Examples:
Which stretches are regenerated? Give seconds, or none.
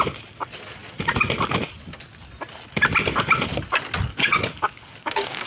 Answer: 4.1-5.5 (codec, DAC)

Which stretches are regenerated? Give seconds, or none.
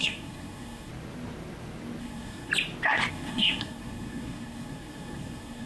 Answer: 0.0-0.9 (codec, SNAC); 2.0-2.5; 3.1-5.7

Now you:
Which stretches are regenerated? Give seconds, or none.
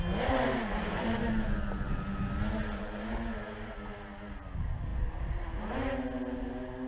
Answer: none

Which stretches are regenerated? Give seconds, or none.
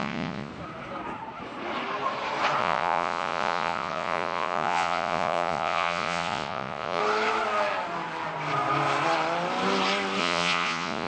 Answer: 0.0-0.5 (vocoder, Vocos); 2.6-7.0; 10.2-11.1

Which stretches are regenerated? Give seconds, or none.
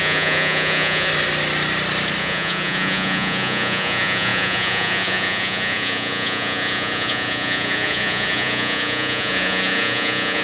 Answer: 0.0-1.1 (vocoder, Vocos); 2.2-10.4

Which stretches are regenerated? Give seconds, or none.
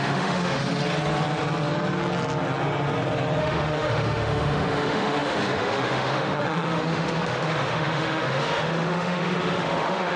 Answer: 0.0-0.6 (autoencoder, DAC-VAE); 3.4-10.2